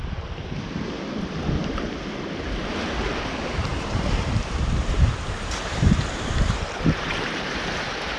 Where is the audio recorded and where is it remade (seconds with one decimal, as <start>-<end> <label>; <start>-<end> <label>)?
0.0-3.7 recorded; 3.7-8.2 remade